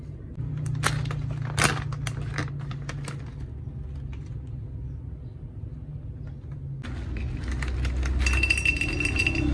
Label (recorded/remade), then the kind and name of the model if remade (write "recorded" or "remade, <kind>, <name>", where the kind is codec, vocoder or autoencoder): recorded